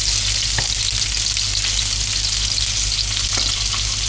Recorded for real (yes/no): yes